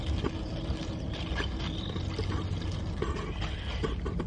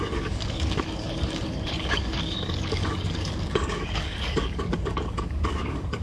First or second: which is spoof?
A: second